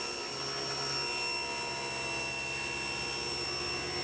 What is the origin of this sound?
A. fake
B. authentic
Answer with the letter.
B